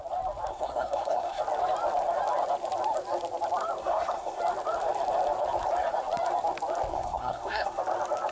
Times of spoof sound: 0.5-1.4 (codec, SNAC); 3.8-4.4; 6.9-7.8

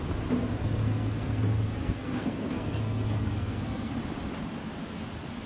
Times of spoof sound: 0.6-3.9 (codec, SNAC)

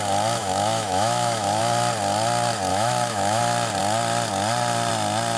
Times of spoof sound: 0.4-1.6 (autoencoder, DAC-VAE); 2.7-3.4

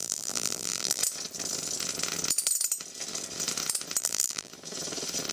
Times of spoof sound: 0.0-1.0 (vocoder, BigVGAN v2); 4.0-4.5

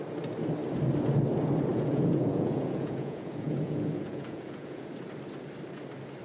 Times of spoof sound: 1.7-4.9 (vocoder, Vocos)

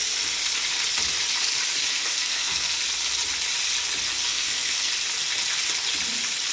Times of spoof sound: 1.9-2.8 (codec, SNAC); 4.3-4.9

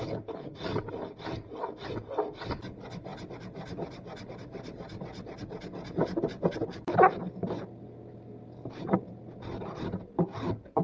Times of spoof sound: none

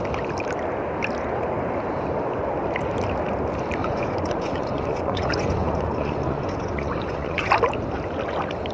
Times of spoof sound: 3.8-7.5 (vocoder, Vocos)